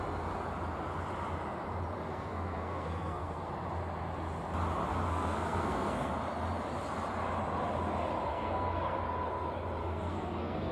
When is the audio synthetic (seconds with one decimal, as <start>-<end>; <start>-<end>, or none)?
2.1-3.5; 4.9-6.1; 8.3-9.0; 9.8-10.7